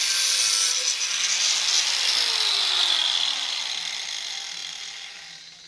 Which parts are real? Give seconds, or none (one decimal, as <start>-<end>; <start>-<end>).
0.0-5.7

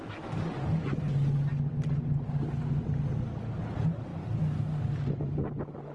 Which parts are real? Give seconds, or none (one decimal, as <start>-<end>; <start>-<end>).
0.0-5.9

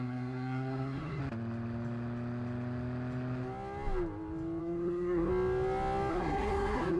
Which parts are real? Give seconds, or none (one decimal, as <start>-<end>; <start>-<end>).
1.2-4.6; 5.3-6.1